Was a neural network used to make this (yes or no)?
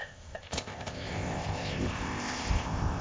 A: yes